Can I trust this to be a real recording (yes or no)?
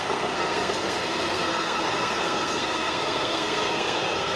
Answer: no